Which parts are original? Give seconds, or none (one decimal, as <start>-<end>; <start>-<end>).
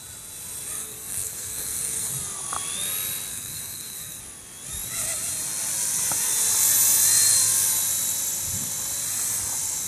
0.0-0.8; 2.1-3.3; 4.2-9.9